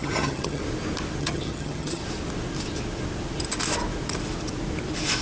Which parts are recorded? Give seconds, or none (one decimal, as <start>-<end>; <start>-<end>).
0.6-1.2; 2.0-5.2